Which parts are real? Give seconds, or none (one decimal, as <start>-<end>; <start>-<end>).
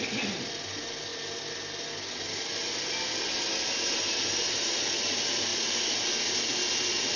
0.0-7.2